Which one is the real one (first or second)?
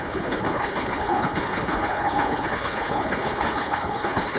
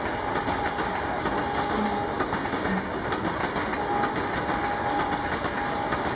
second